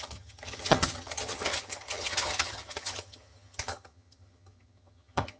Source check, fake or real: fake